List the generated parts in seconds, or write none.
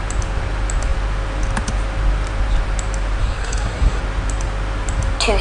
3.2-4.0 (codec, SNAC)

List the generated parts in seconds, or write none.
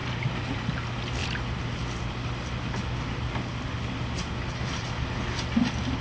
0.0-0.7 (vocoder, BigVGAN v2)